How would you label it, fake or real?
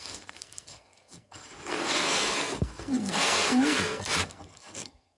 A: fake